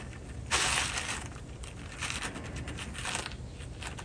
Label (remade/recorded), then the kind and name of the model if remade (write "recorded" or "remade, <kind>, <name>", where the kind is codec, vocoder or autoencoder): recorded